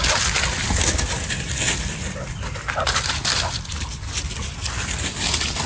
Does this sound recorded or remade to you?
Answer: recorded